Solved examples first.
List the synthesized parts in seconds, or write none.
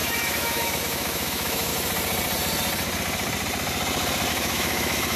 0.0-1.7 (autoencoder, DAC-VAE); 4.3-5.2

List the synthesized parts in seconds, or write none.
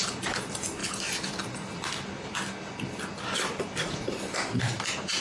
none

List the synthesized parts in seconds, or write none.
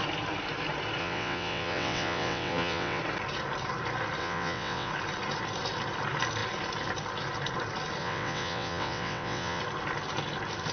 1.0-3.0 (vocoder, WaveNeXt); 4.2-4.9; 8.0-9.6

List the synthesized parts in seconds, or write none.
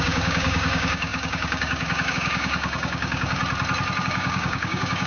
0.0-3.4 (codec, DAC); 4.0-5.1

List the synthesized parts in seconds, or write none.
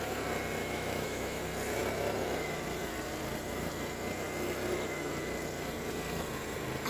0.6-1.4 (autoencoder, DAC-VAE)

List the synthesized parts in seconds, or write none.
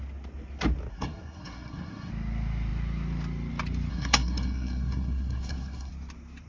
0.9-2.1 (codec, SNAC); 3.9-5.9